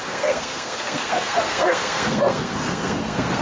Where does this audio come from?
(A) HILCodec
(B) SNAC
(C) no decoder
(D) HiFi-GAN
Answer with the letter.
B